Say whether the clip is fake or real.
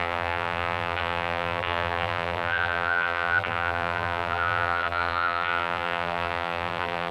fake